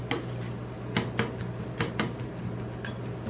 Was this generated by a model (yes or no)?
no